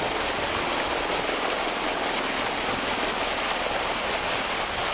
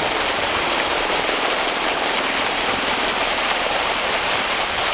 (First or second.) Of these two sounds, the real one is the first